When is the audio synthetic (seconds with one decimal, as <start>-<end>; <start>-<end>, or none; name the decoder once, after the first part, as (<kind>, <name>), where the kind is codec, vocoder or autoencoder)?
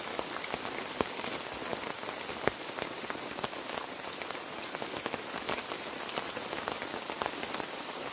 none